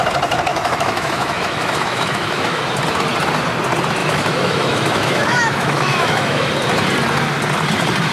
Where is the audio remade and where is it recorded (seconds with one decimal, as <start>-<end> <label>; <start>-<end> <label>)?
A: 0.0-0.5 recorded; 0.5-2.6 remade; 2.6-4.0 recorded; 4.0-6.5 remade; 6.5-8.1 recorded